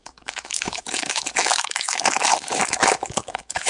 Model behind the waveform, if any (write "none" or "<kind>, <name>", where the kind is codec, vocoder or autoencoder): autoencoder, DAC-VAE